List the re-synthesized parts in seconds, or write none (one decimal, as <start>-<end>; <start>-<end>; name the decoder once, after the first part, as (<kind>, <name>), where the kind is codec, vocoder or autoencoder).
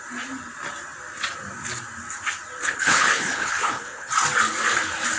2.6-4.1 (codec, HILCodec)